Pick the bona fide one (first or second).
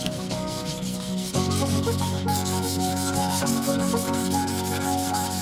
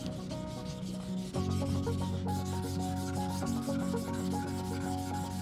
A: second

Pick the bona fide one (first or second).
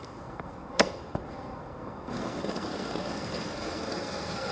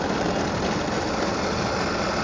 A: second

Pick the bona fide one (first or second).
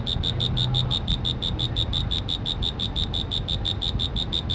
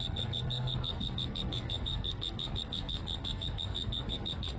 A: first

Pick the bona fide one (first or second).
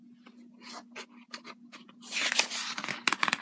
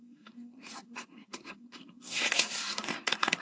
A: first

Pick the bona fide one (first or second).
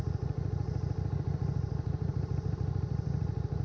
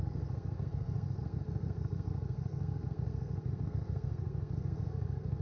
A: first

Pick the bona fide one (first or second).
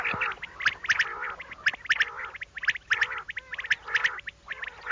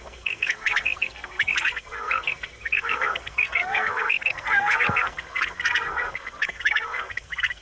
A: first